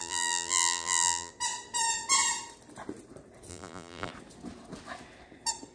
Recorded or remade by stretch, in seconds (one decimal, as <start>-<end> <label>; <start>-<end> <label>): 0.0-1.3 remade; 1.3-3.5 recorded; 3.5-4.1 remade; 4.1-5.7 recorded

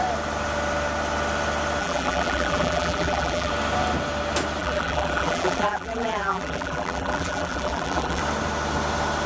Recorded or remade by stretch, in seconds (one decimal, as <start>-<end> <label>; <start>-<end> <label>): 0.0-1.8 recorded; 1.8-3.5 remade; 3.5-4.6 recorded; 4.6-8.2 remade; 8.2-9.3 recorded

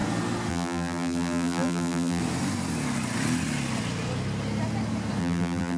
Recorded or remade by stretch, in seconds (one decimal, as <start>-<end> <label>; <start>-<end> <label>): 0.0-0.5 recorded; 0.5-2.2 remade; 2.2-5.2 recorded; 5.2-5.8 remade

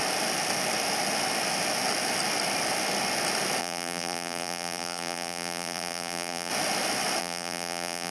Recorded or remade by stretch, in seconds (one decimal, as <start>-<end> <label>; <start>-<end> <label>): 0.0-3.6 recorded; 3.6-6.5 remade; 6.5-7.2 recorded; 7.2-8.1 remade

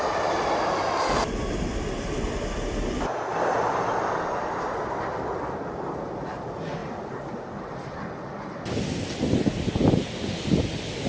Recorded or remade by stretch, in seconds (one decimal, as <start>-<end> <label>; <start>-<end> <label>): 0.0-11.1 recorded